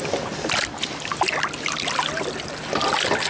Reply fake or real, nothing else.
real